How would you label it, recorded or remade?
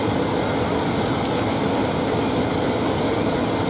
recorded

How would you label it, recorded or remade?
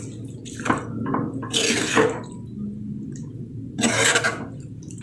recorded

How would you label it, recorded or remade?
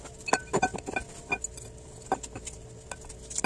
recorded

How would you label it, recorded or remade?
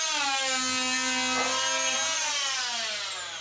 recorded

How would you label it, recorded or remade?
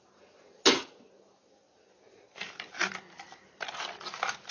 recorded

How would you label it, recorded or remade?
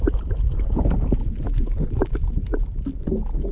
recorded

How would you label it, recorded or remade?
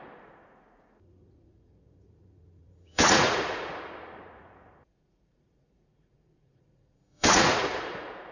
remade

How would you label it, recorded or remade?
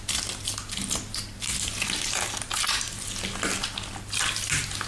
recorded